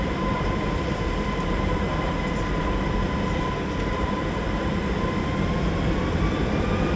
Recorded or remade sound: remade